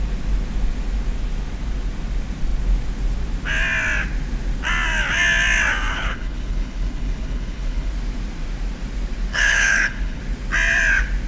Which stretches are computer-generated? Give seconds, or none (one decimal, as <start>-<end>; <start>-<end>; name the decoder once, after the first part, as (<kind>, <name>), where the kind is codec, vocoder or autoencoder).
5.9-7.9 (codec, HILCodec); 9.3-10.2